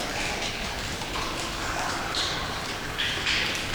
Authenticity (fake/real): fake